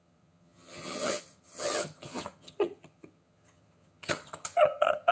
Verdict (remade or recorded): remade